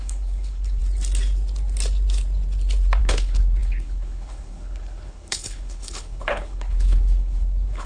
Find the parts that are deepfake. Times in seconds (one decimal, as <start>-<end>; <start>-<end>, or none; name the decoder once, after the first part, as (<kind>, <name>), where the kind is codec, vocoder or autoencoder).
0.0-0.8 (codec, HILCodec); 3.0-7.9